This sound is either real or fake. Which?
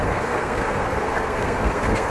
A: fake